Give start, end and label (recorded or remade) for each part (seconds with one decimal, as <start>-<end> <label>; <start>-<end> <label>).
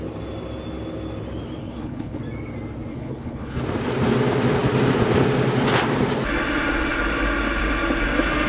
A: 0.0-1.6 recorded; 1.6-2.2 remade; 2.2-2.9 recorded; 2.9-3.6 remade; 3.6-8.5 recorded